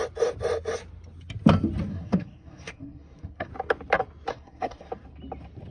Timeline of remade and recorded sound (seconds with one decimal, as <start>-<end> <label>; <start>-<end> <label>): 0.0-1.9 recorded; 1.9-3.5 remade; 3.5-4.3 recorded; 4.3-4.9 remade; 4.9-5.7 recorded